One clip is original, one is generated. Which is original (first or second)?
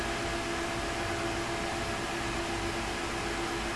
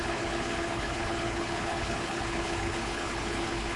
first